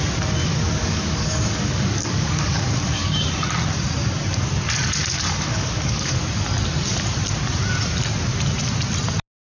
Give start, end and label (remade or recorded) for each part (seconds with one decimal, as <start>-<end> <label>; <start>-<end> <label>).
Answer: 0.0-0.4 recorded; 0.4-3.3 remade; 3.3-5.0 recorded; 5.0-6.2 remade; 6.2-9.6 recorded